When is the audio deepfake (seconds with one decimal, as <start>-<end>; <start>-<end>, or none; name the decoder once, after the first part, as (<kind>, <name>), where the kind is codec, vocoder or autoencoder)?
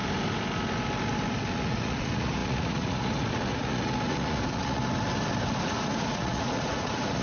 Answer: 1.5-4.8 (vocoder, Vocos); 5.6-7.2